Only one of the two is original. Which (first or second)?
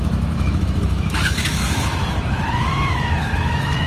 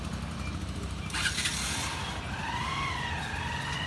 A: second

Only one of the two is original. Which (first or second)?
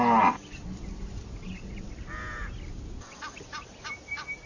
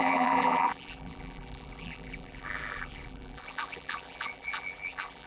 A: first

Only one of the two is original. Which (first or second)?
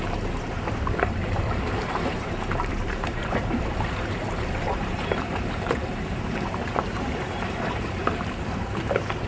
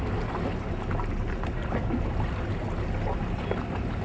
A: second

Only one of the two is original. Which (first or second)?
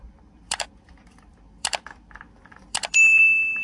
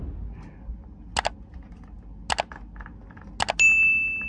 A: second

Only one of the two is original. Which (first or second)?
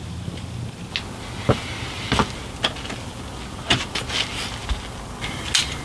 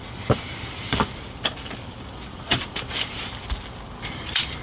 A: first